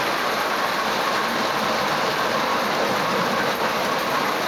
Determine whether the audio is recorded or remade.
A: remade